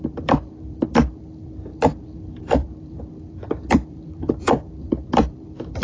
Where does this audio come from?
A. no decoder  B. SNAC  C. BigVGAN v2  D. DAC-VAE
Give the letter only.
C